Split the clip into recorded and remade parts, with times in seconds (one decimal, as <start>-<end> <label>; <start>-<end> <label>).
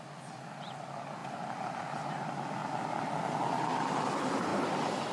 0.0-2.6 remade; 2.6-3.2 recorded; 3.2-4.5 remade; 4.5-5.1 recorded